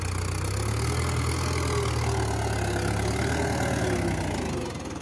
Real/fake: real